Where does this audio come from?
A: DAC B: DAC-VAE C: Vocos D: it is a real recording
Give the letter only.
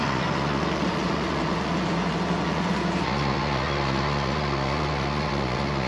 C